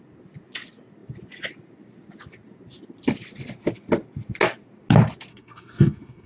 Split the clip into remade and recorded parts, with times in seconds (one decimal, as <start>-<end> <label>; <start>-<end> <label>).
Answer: 0.0-5.3 recorded; 5.3-6.3 remade